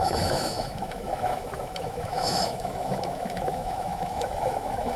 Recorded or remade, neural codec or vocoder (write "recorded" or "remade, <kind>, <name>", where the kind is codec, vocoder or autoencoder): remade, autoencoder, DAC-VAE